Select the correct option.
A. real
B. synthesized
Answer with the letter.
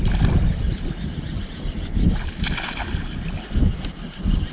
A